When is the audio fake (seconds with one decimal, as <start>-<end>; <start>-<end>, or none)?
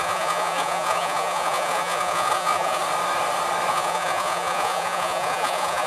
0.0-2.8; 3.7-5.9